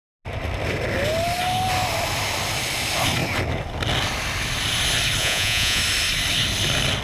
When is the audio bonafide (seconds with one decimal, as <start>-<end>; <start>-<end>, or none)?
0.0-5.2; 5.8-7.0